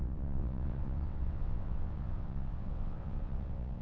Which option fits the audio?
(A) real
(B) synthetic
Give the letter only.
B